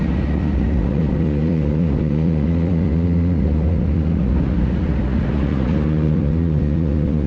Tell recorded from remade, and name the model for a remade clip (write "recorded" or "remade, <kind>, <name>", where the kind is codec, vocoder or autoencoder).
remade, vocoder, Vocos